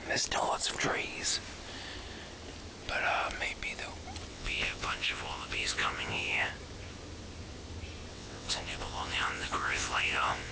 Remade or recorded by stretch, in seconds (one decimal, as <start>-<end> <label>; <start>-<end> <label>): 0.0-4.3 recorded; 4.3-6.5 remade; 6.5-8.1 recorded; 8.1-10.5 remade